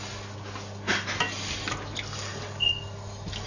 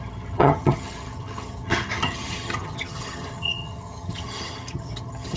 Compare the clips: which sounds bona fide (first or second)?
first